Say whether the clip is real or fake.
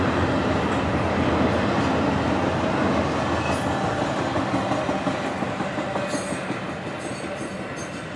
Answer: real